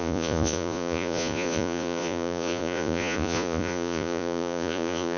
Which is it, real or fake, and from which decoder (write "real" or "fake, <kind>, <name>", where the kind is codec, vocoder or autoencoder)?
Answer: fake, vocoder, Vocos